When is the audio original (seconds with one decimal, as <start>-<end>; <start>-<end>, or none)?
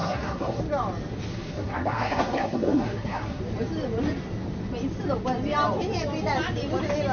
0.6-1.3; 3.4-7.1